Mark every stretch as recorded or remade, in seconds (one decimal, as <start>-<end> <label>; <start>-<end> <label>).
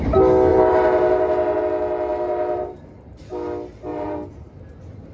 0.0-0.5 recorded; 0.5-1.6 remade; 1.6-2.1 recorded; 2.1-3.3 remade; 3.3-3.9 recorded; 3.9-4.6 remade; 4.6-5.1 recorded